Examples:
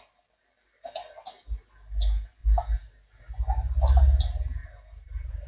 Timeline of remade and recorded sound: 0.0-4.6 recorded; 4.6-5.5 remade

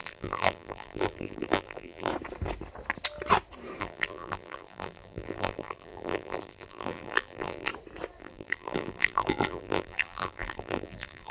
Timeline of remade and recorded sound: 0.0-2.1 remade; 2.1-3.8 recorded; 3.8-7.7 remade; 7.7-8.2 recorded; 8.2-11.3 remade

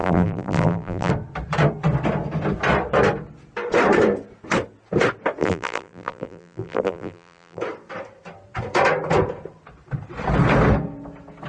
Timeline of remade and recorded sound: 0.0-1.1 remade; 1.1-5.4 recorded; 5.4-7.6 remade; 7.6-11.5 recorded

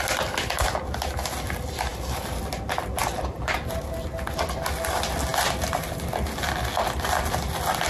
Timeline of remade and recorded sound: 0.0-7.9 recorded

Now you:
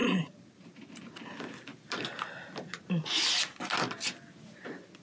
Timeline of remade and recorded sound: 0.0-0.9 remade; 0.9-5.0 recorded

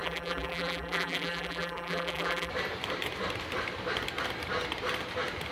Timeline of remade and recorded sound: 0.0-2.5 remade; 2.5-5.5 recorded